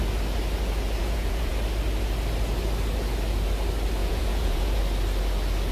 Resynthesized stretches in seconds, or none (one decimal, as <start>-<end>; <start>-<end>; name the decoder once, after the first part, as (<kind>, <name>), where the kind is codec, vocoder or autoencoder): 1.0-1.5 (vocoder, Vocos); 4.0-4.8